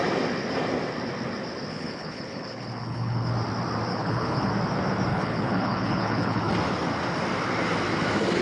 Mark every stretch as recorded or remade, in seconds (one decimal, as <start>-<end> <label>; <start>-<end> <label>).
0.0-1.7 recorded; 1.7-3.3 remade; 3.3-3.9 recorded; 3.9-4.5 remade; 4.5-5.1 recorded; 5.1-6.5 remade; 6.5-8.4 recorded